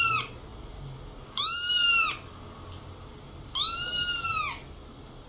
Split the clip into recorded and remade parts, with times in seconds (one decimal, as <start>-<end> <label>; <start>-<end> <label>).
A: 0.0-5.3 recorded